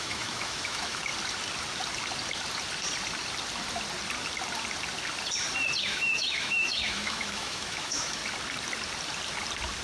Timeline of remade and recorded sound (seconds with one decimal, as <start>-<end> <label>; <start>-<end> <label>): 0.0-1.1 remade; 1.1-5.8 recorded; 5.8-8.2 remade; 8.2-9.8 recorded

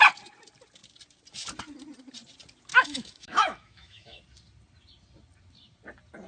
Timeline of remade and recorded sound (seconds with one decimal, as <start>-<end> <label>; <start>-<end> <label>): 0.0-2.7 recorded; 2.7-4.2 remade; 4.2-6.3 recorded

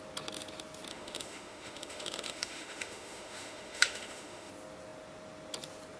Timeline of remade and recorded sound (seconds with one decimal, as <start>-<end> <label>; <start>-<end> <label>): 0.0-0.9 recorded; 0.9-4.5 remade; 4.5-6.0 recorded

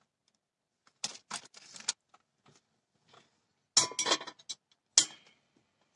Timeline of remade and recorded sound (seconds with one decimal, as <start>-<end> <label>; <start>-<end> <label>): 0.0-6.0 recorded

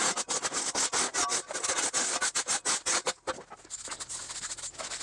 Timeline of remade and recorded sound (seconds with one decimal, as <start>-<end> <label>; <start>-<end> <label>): 0.0-5.0 recorded

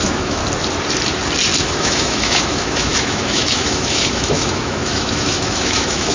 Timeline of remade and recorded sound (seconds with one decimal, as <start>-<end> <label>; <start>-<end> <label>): 0.0-0.4 remade; 0.4-1.6 recorded; 1.6-6.1 remade

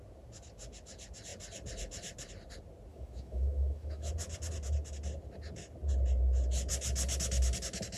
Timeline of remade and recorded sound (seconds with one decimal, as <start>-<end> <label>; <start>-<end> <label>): 0.0-2.9 recorded; 2.9-4.1 remade; 4.1-8.0 recorded

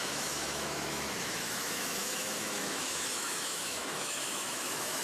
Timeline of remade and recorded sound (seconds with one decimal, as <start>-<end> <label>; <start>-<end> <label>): 0.0-5.0 remade